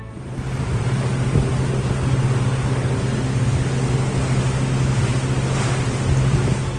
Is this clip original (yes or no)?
yes